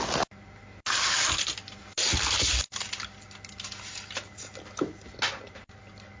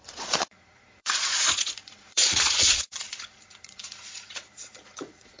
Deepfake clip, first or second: second